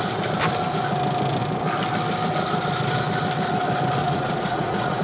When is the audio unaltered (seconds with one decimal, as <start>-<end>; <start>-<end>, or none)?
0.0-4.0